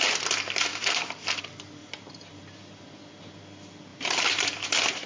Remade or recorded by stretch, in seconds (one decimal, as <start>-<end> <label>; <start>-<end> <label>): 0.0-0.7 recorded; 0.7-1.4 remade; 1.4-1.8 recorded; 1.8-2.8 remade; 2.8-3.9 recorded; 3.9-5.1 remade